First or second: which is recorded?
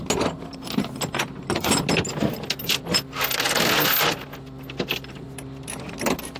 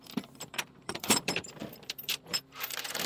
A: first